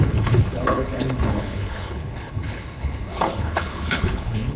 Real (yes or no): no